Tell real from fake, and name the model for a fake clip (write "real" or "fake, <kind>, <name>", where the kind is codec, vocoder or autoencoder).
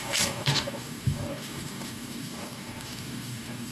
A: fake, codec, DAC